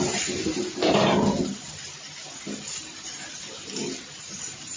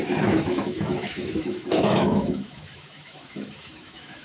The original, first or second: first